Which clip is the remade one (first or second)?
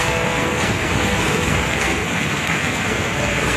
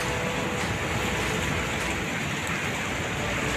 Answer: first